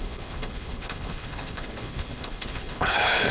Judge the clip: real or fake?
fake